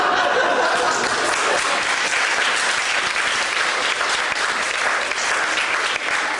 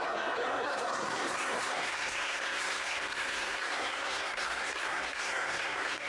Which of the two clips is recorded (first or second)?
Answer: first